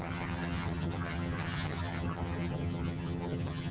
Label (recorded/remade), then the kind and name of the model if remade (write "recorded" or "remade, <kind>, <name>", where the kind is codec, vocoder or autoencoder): remade, vocoder, HiFi-GAN